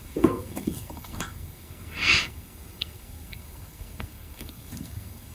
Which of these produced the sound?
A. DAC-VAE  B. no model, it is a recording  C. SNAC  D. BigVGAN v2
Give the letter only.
C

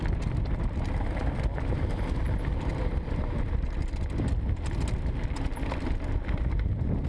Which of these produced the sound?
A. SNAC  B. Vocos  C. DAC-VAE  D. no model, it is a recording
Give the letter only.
D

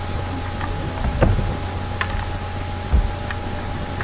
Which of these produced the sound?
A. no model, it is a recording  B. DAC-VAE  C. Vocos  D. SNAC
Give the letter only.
A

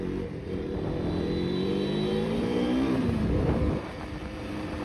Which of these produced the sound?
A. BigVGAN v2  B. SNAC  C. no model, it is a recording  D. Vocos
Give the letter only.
A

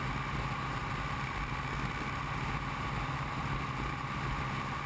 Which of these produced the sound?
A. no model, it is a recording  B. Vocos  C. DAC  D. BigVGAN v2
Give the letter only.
A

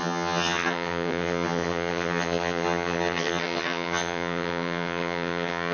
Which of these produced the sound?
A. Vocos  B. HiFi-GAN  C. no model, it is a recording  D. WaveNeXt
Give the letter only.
B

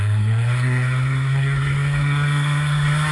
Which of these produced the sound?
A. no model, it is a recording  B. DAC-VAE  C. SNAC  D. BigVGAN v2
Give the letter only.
C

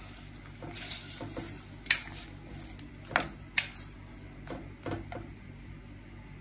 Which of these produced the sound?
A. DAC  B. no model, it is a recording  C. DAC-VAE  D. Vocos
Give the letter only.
B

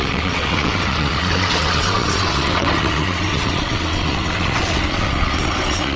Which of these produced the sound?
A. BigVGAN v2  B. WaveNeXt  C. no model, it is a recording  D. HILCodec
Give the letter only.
B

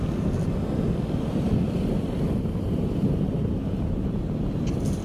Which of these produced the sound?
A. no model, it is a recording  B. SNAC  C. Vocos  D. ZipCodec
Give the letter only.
A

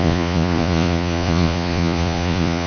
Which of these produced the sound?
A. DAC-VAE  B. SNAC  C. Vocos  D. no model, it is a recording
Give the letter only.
C